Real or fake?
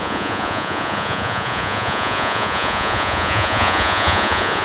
fake